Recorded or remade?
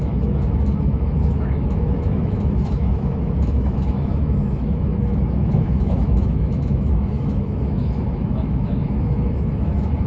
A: remade